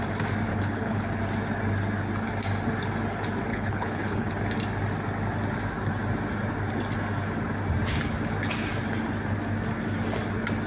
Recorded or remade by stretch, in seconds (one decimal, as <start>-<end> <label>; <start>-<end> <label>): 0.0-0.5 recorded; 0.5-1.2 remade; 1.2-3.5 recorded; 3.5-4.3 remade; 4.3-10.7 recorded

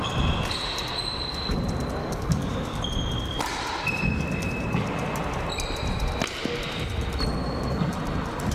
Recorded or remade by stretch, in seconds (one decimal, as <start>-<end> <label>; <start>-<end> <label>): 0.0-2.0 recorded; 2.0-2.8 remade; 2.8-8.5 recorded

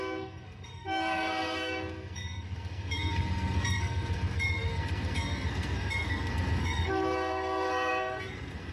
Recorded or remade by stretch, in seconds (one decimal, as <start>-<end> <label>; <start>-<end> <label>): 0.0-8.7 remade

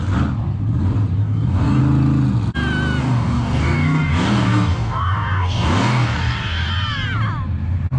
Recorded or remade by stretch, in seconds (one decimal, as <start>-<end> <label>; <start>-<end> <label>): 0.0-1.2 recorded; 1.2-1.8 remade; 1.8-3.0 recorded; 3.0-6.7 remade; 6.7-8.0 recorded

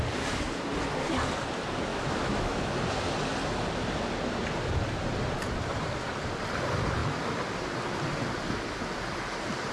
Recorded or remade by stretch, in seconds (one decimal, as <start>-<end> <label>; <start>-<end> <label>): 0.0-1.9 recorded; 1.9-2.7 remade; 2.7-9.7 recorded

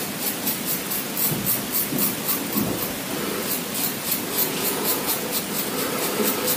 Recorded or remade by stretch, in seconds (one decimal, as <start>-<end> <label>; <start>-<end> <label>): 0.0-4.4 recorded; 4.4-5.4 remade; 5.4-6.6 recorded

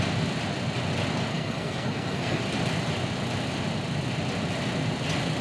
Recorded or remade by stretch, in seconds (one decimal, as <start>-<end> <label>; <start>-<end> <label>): 0.0-1.3 recorded; 1.3-2.4 remade; 2.4-5.4 recorded